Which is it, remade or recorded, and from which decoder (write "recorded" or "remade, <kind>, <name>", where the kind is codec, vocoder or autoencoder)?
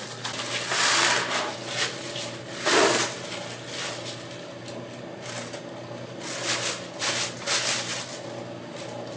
recorded